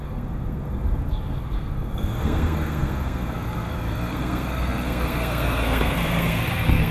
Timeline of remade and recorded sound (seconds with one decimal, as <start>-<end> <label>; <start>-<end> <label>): 0.0-6.9 remade